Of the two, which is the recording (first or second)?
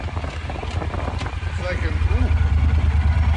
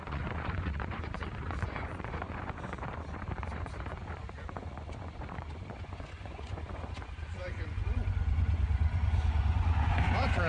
first